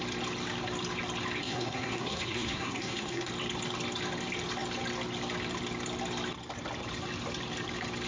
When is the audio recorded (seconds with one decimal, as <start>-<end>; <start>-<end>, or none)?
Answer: 0.0-1.4; 3.3-8.1